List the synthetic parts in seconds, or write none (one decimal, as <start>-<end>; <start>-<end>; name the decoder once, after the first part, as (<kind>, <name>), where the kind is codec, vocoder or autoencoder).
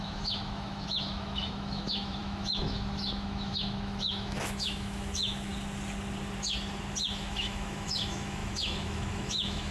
0.0-5.5 (autoencoder, DAC-VAE); 7.0-9.7